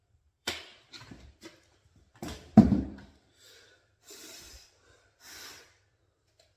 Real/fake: fake